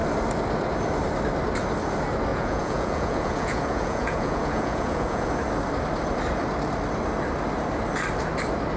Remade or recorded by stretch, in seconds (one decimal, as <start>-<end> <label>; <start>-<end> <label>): 0.0-2.3 recorded; 2.3-5.3 remade; 5.3-8.8 recorded